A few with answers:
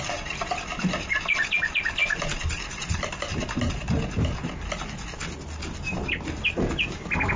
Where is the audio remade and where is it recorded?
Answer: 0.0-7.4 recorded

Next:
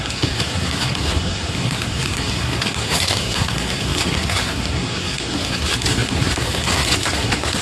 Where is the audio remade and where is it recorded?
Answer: 0.0-7.6 remade